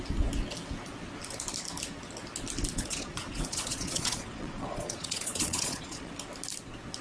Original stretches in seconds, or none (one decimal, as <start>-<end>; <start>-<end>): 0.0-2.7; 6.1-7.0